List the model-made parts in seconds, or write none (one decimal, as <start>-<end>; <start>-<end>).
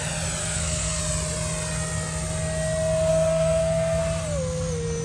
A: 0.4-1.0; 3.1-4.0